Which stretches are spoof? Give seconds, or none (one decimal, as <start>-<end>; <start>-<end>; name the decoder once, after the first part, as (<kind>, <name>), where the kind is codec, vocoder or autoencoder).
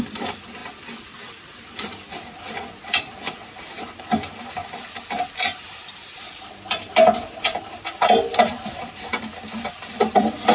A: 0.0-0.6 (vocoder, BigVGAN v2); 4.0-4.6; 8.4-10.5